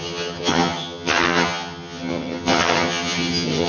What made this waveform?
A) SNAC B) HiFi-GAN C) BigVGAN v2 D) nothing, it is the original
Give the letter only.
B